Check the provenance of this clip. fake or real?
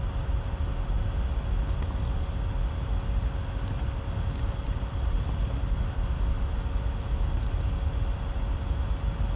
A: real